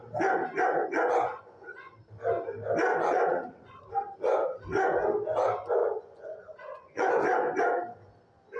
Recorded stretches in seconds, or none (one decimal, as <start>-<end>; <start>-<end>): 0.0-0.8; 1.9-2.9; 3.8-5.8; 7.1-8.6

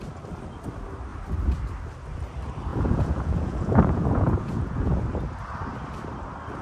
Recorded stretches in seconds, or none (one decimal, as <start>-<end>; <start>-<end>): 0.0-2.7; 5.0-6.6

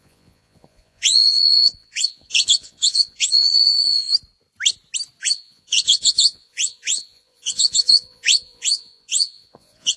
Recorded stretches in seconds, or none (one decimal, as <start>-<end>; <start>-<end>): 4.1-5.2